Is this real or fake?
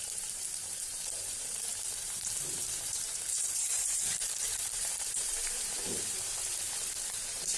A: fake